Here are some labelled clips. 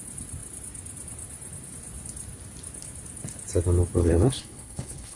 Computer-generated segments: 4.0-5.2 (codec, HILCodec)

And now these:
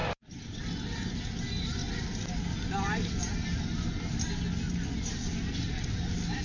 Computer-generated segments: 0.0-1.2 (vocoder, BigVGAN v2)

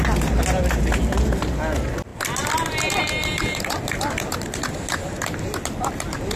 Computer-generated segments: none

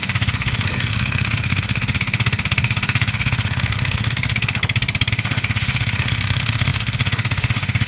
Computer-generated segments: 0.0-4.6 (autoencoder, DAC-VAE); 5.1-7.9